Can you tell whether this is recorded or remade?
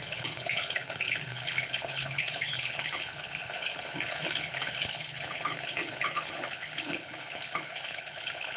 remade